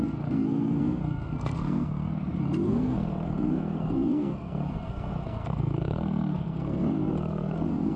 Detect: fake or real fake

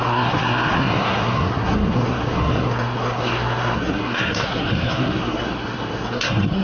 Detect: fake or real fake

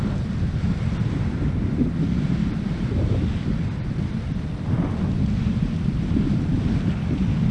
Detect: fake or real real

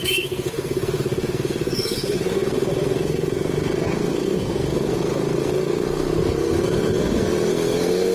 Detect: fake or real fake